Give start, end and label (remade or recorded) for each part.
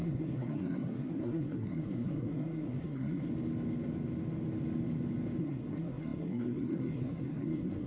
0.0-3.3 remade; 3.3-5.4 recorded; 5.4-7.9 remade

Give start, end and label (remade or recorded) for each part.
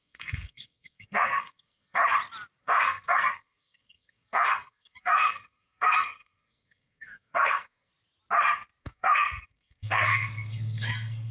0.0-2.0 remade; 2.0-2.6 recorded; 2.6-7.9 remade; 7.9-8.8 recorded; 8.8-11.3 remade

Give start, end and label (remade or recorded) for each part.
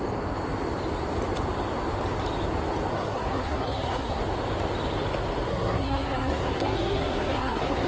0.0-2.9 recorded; 2.9-4.2 remade; 4.2-5.5 recorded; 5.5-7.9 remade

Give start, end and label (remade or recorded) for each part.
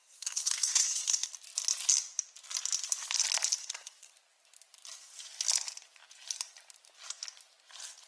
0.0-1.3 remade; 1.3-3.6 recorded; 3.6-4.1 remade; 4.1-8.1 recorded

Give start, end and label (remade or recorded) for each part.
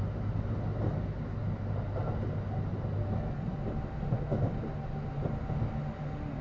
0.0-6.4 recorded